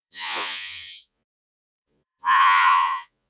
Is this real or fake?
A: fake